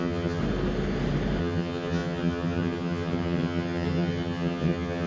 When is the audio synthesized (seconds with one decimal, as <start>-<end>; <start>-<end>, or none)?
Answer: 0.0-0.4; 1.4-5.1